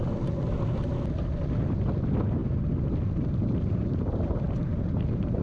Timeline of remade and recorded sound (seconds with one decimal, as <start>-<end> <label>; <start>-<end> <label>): 0.0-5.4 recorded